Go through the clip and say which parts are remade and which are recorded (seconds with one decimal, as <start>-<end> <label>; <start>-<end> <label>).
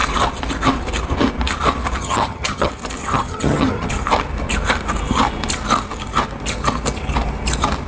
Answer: 0.0-2.0 recorded; 2.0-2.7 remade; 2.7-3.1 recorded; 3.1-3.9 remade; 3.9-7.9 recorded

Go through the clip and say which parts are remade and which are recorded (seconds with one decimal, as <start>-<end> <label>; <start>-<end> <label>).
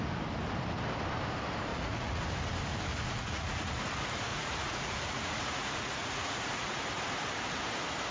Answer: 0.0-1.7 recorded; 1.7-2.2 remade; 2.2-2.9 recorded; 2.9-3.8 remade; 3.8-4.3 recorded; 4.3-6.9 remade; 6.9-8.1 recorded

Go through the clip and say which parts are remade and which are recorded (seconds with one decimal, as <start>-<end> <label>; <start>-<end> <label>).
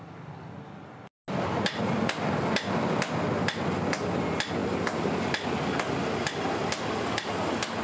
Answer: 0.0-7.8 recorded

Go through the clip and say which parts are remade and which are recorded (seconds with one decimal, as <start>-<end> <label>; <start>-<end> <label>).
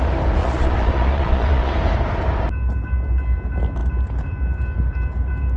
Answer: 0.0-0.4 recorded; 0.4-1.7 remade; 1.7-5.6 recorded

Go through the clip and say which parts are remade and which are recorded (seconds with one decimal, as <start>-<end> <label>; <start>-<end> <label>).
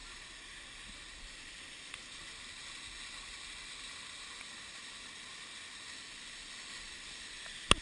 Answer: 0.0-7.8 recorded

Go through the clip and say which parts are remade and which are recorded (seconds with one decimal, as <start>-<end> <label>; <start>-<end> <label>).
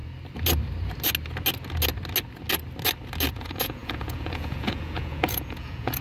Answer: 0.0-3.3 recorded; 3.3-6.0 remade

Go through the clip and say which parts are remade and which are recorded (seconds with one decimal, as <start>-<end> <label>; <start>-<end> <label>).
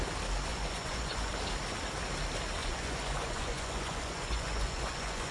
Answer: 0.0-0.5 recorded; 0.5-1.3 remade; 1.3-2.6 recorded; 2.6-5.3 remade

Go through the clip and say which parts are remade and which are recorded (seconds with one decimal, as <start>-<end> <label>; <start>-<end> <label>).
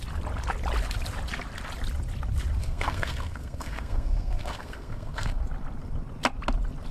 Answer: 0.0-2.6 recorded; 2.6-5.4 remade; 5.4-6.9 recorded